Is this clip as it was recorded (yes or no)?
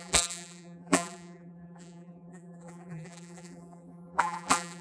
no